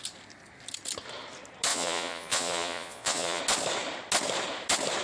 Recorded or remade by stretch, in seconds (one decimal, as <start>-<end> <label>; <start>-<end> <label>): 0.0-1.7 recorded; 1.7-3.4 remade; 3.4-5.0 recorded